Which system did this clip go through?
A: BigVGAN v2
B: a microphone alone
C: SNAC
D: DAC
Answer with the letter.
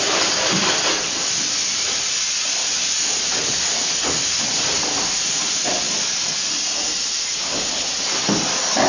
B